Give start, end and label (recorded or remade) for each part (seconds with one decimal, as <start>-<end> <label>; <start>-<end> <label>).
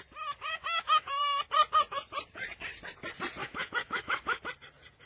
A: 0.0-0.5 recorded; 0.5-1.2 remade; 1.2-3.4 recorded; 3.4-4.5 remade; 4.5-5.1 recorded